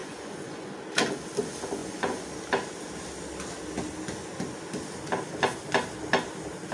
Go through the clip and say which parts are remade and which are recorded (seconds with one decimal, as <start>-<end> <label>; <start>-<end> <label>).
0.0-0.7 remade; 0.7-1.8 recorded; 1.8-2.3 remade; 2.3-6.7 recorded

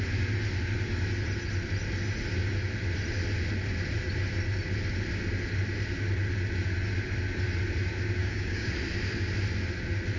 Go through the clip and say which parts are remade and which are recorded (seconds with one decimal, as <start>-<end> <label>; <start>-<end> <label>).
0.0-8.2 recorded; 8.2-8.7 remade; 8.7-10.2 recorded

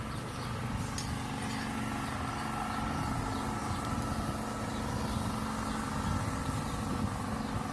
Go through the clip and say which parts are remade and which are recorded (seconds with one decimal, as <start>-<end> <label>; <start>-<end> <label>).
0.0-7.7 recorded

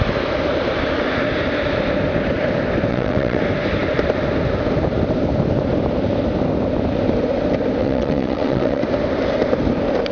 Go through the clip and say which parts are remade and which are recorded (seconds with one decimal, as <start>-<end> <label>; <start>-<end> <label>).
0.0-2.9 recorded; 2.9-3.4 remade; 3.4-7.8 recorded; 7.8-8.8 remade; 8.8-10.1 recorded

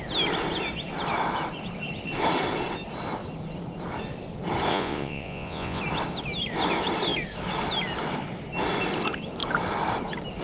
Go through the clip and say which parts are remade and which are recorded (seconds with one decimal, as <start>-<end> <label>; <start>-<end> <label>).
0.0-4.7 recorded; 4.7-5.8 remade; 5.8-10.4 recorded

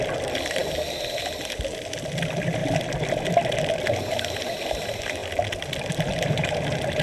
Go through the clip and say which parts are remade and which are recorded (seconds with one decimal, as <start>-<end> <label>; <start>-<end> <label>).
0.0-7.0 recorded

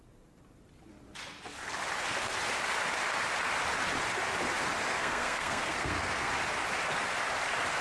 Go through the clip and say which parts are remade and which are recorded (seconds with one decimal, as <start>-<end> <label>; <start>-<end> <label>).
0.0-4.9 recorded; 4.9-6.3 remade; 6.3-7.8 recorded